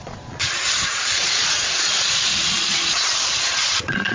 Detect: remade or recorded remade